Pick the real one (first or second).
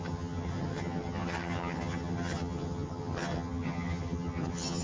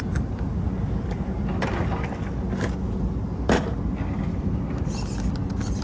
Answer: second